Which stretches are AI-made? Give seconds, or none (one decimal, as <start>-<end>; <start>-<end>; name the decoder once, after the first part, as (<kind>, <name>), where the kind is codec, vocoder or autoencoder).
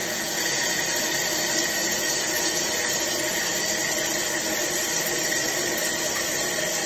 0.0-0.8 (vocoder, Vocos); 1.8-2.7